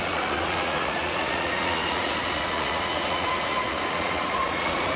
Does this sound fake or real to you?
fake